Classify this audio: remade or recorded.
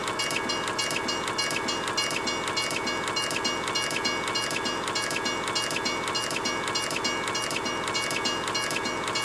recorded